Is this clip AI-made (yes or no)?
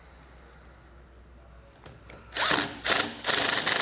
no